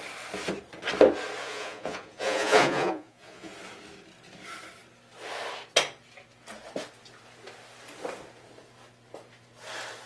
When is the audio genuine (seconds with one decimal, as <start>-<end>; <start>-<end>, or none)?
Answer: 0.0-1.4; 3.5-10.1